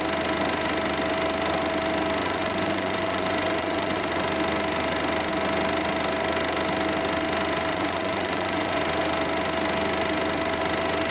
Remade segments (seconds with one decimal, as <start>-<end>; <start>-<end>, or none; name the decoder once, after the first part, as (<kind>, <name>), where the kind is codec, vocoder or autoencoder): 2.2-4.3 (vocoder, Vocos); 7.7-8.8